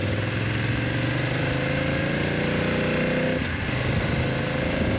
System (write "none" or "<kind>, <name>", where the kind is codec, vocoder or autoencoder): none